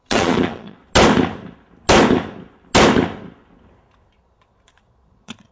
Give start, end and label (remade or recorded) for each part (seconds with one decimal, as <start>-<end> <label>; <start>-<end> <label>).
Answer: 0.0-0.8 remade; 0.8-4.1 recorded; 4.1-5.5 remade

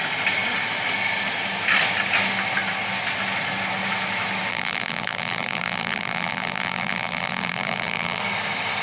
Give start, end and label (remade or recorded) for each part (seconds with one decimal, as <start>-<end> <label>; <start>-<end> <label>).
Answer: 0.0-4.5 recorded; 4.5-8.2 remade; 8.2-8.8 recorded

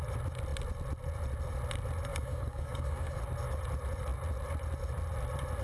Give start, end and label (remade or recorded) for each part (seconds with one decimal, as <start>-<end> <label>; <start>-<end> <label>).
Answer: 0.0-2.1 recorded; 2.1-3.2 remade; 3.2-5.6 recorded

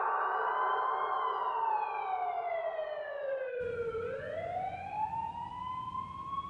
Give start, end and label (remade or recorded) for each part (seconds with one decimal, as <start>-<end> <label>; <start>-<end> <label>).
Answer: 0.0-2.4 recorded; 2.4-5.1 remade; 5.1-6.5 recorded

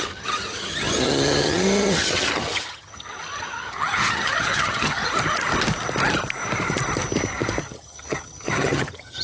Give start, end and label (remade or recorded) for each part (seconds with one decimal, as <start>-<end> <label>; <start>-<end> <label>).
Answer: 0.0-5.0 remade; 5.0-7.6 recorded; 7.6-9.2 remade